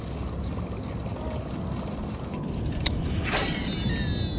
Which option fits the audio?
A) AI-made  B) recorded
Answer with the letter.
B